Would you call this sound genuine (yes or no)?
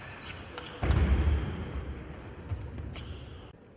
yes